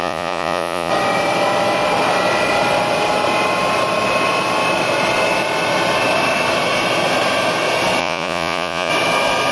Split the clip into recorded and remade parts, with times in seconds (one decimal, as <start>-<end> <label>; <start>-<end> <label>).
0.0-0.9 remade; 0.9-8.0 recorded; 8.0-8.9 remade; 8.9-9.5 recorded

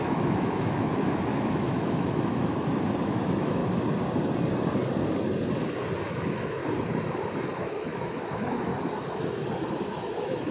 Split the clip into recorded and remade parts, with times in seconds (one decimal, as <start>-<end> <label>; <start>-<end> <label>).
0.0-3.6 remade; 3.6-6.0 recorded; 6.0-6.6 remade; 6.6-7.6 recorded; 7.6-8.7 remade; 8.7-9.8 recorded; 9.8-10.5 remade

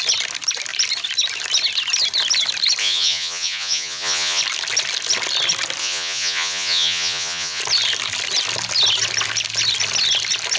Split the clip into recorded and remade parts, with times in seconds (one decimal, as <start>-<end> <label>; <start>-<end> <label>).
0.0-2.8 recorded; 2.8-4.4 remade; 4.4-5.8 recorded; 5.8-7.6 remade; 7.6-10.6 recorded

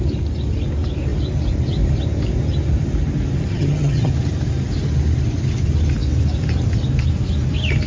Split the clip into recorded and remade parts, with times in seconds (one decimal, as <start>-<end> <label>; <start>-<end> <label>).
0.0-3.5 recorded; 3.5-4.1 remade; 4.1-7.9 recorded

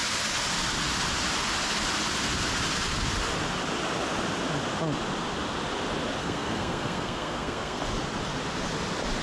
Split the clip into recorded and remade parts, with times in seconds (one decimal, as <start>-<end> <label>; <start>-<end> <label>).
0.0-6.2 recorded; 6.2-7.8 remade; 7.8-9.2 recorded

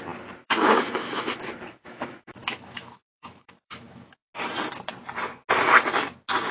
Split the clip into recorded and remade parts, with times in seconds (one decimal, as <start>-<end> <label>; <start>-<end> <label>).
0.0-0.4 recorded; 0.4-4.3 remade; 4.3-6.5 recorded

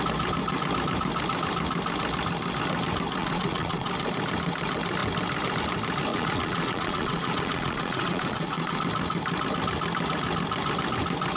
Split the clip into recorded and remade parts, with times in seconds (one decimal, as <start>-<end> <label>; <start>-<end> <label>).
0.0-3.2 recorded; 3.2-3.9 remade; 3.9-6.1 recorded; 6.1-8.8 remade; 8.8-11.4 recorded